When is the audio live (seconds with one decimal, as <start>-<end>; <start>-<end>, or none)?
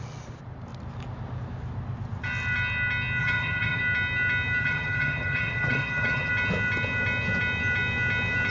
0.0-3.2; 3.8-4.6; 6.3-8.5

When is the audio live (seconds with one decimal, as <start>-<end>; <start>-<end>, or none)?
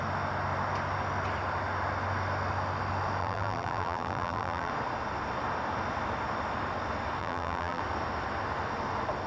0.0-3.2; 4.7-7.2; 7.8-9.3